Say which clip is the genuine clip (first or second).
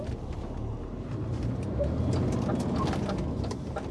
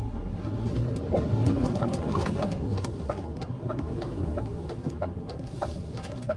first